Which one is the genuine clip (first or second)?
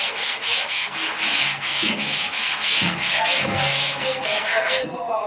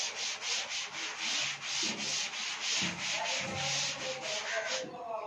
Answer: second